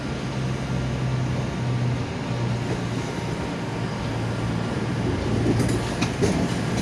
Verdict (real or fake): real